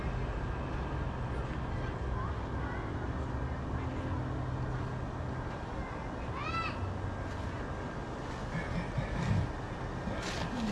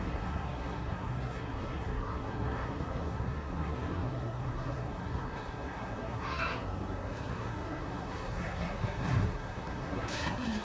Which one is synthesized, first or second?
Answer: second